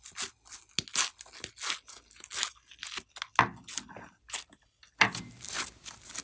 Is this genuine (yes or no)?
yes